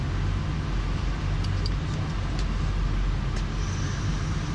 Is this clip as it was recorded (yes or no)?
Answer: yes